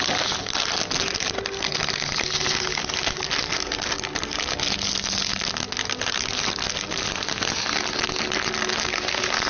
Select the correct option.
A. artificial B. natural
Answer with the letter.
B